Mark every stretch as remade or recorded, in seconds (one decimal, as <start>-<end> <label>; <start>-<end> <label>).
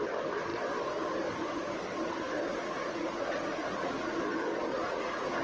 0.0-2.5 recorded; 2.5-4.2 remade; 4.2-4.7 recorded; 4.7-5.4 remade